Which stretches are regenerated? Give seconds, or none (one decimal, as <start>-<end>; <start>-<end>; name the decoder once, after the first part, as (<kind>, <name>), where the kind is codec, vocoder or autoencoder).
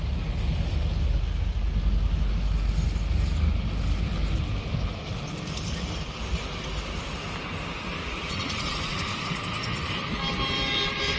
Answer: 8.0-9.1 (vocoder, Vocos)